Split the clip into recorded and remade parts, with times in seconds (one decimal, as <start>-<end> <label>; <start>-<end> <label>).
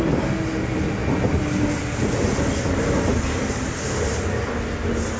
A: 0.0-5.2 recorded